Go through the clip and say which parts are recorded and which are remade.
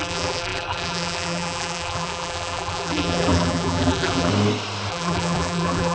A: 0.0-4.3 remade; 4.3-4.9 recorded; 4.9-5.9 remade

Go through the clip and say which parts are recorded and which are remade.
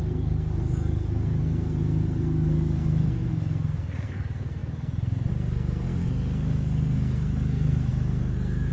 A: 0.0-8.7 remade